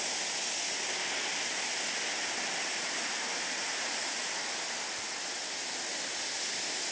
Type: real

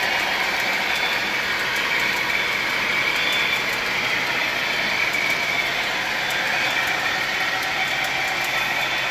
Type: real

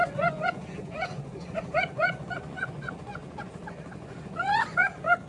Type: fake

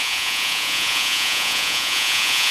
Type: fake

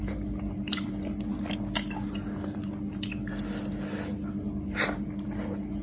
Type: real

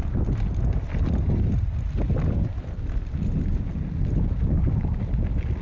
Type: real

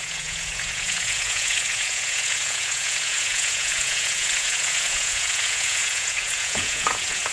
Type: fake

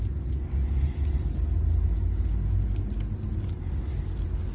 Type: real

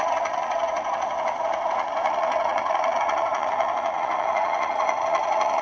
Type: fake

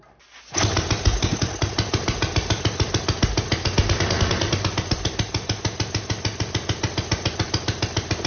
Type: real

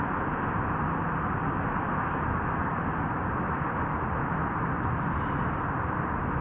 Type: real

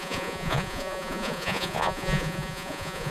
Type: fake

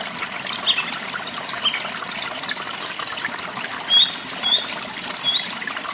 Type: real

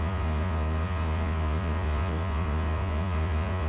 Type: fake